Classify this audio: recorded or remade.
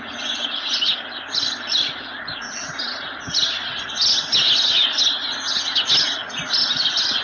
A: recorded